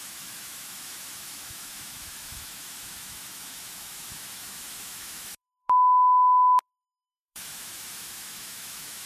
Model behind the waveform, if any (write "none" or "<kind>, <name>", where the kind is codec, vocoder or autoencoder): autoencoder, DAC-VAE